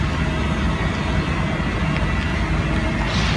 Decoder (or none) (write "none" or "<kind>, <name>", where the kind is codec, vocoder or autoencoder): none